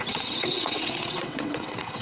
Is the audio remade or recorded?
remade